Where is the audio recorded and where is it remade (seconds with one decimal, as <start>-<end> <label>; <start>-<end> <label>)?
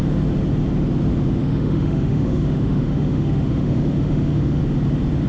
0.0-1.4 recorded; 1.4-4.6 remade; 4.6-5.3 recorded